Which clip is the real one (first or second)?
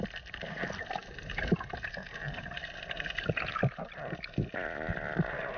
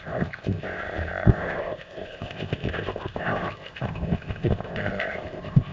first